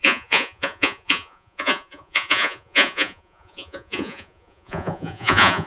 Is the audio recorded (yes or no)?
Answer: no